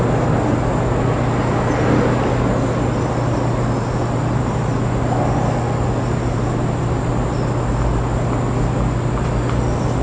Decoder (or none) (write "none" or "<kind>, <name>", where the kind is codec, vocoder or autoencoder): none